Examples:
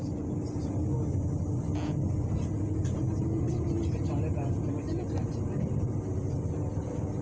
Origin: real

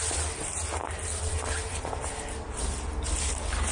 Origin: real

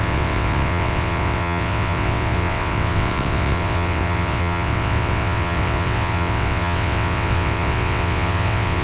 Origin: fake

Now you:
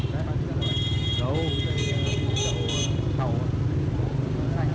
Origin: real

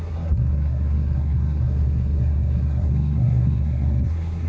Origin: fake